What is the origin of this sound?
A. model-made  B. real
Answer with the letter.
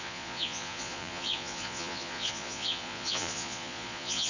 A